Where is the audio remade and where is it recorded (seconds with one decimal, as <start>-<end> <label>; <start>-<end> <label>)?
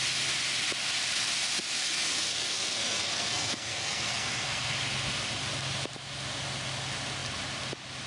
0.0-1.8 recorded; 1.8-4.7 remade; 4.7-8.1 recorded